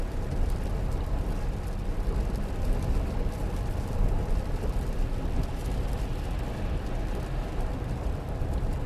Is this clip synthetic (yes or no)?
no